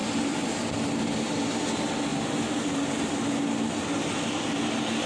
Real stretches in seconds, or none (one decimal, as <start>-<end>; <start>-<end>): 0.6-2.1; 2.9-5.1